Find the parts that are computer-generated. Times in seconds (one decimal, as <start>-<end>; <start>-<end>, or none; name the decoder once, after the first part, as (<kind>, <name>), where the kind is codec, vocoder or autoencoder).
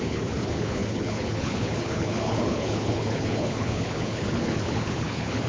0.0-5.5 (codec, HILCodec)